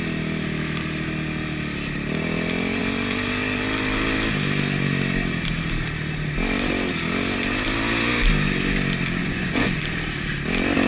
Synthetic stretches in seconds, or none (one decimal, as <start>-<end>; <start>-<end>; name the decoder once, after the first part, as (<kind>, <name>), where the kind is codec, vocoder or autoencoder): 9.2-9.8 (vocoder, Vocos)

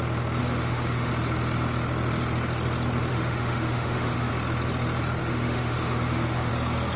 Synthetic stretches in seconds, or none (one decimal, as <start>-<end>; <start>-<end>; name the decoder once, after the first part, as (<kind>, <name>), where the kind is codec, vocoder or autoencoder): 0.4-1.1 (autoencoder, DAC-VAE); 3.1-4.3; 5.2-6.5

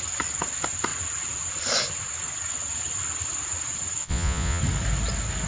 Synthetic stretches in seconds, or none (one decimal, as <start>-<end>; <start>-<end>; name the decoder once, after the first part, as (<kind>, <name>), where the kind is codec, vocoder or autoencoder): 4.0-4.6 (vocoder, Vocos)

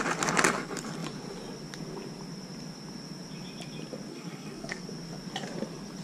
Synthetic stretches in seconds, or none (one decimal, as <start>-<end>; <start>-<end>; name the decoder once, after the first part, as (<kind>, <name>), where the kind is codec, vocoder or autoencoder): 4.1-4.8 (codec, SNAC)

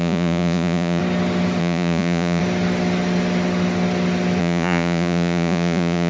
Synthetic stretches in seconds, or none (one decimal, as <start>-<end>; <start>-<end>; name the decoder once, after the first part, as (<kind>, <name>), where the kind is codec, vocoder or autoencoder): 0.0-1.0 (vocoder, Vocos); 1.6-2.4; 4.4-6.1

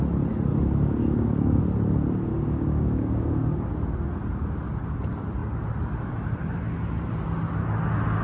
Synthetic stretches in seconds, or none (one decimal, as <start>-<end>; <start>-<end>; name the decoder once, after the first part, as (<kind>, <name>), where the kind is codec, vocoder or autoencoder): 0.5-1.6 (codec, DAC); 2.3-3.7